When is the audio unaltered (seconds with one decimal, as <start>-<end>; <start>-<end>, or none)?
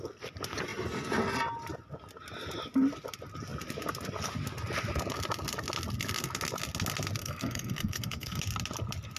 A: 0.0-7.2; 8.4-9.2